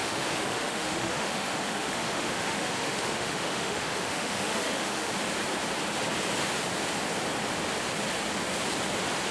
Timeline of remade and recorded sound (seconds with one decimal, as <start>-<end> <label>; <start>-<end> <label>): 0.0-5.1 remade; 5.1-9.3 recorded

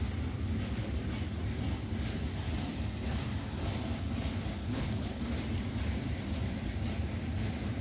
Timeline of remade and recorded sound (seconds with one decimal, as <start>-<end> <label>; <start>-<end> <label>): 0.0-4.6 recorded; 4.6-5.2 remade; 5.2-7.8 recorded

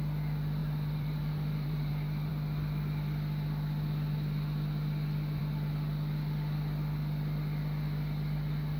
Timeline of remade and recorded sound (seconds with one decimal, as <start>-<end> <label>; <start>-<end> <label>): 0.0-0.6 recorded; 0.6-1.9 remade; 1.9-8.8 recorded

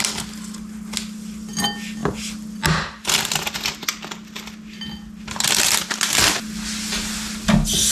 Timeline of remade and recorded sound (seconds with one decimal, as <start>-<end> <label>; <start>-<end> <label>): 0.0-7.9 recorded